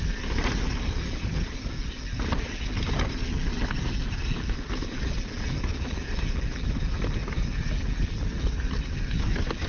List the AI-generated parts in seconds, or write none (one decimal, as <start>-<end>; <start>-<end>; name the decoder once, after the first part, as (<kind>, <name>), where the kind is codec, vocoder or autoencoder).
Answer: none